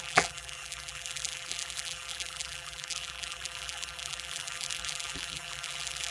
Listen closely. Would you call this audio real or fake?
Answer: fake